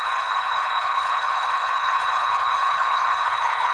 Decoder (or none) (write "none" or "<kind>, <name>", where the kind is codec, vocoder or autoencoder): codec, HILCodec